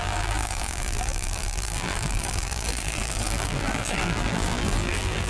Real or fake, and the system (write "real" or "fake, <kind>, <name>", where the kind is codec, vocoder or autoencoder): fake, vocoder, BigVGAN v2